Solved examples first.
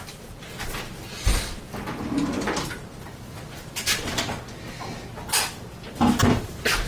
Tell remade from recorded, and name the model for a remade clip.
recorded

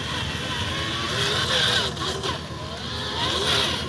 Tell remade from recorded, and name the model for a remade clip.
recorded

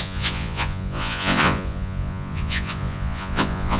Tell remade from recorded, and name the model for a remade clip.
remade, vocoder, Vocos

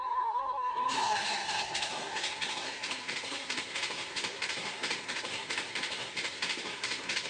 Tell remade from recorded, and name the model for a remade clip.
remade, codec, SNAC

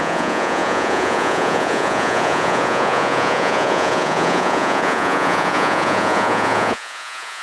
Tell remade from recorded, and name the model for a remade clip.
remade, vocoder, Vocos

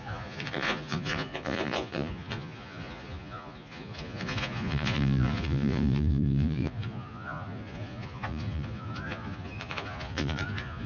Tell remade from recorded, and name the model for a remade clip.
remade, vocoder, Vocos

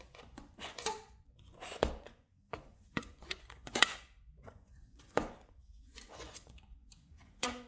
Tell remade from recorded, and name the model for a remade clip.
remade, vocoder, Vocos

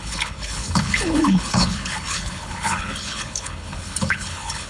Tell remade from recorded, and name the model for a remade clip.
remade, codec, HILCodec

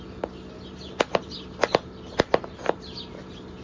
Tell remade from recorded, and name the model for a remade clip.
recorded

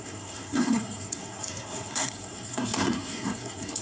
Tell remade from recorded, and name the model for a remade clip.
remade, codec, SNAC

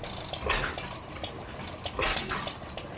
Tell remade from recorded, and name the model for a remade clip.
recorded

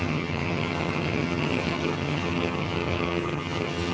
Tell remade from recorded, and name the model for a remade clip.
remade, vocoder, HiFi-GAN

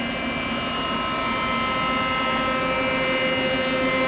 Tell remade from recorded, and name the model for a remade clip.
recorded